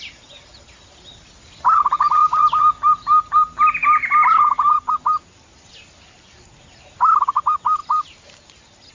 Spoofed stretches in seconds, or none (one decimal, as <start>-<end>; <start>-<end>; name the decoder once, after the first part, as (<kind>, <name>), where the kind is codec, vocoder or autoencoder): none